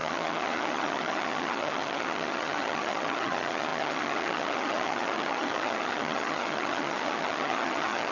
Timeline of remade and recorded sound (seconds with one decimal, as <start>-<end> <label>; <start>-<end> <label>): 0.0-8.1 remade